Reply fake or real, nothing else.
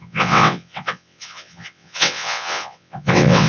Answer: fake